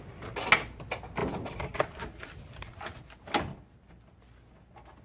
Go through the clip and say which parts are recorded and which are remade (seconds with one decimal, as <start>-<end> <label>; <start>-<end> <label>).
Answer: 0.0-5.0 recorded